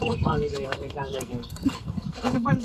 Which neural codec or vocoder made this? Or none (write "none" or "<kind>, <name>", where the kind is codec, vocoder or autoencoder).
codec, SNAC